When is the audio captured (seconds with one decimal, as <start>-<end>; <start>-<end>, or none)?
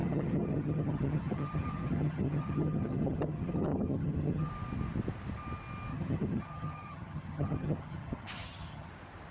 4.5-5.9; 8.9-9.3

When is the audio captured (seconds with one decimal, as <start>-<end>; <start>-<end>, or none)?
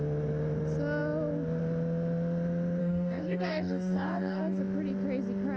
0.0-2.8; 4.6-5.6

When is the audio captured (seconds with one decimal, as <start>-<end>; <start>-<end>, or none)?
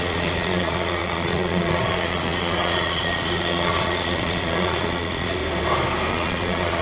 5.4-6.1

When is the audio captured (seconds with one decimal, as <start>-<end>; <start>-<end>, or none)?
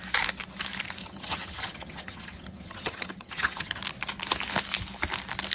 0.0-1.0; 3.8-5.5